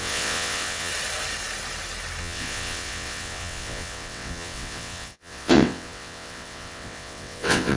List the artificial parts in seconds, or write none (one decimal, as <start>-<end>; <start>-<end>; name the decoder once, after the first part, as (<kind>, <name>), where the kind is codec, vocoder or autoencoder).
0.0-0.9 (vocoder, WaveNeXt); 2.2-7.8